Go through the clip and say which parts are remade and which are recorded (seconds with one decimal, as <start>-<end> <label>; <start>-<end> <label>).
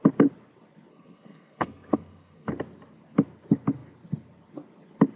0.0-0.9 recorded; 0.9-2.5 remade; 2.5-5.2 recorded